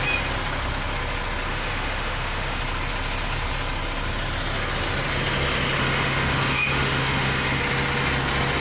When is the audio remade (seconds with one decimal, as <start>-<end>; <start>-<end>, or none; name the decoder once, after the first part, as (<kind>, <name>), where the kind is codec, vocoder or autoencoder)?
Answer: 1.5-2.6 (autoencoder, DAC-VAE); 5.8-7.6